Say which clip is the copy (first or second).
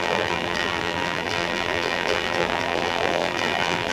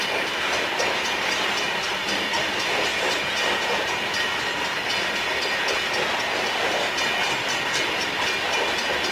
first